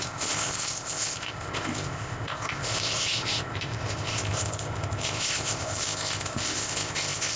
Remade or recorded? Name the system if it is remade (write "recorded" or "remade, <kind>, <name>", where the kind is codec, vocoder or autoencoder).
remade, codec, ZipCodec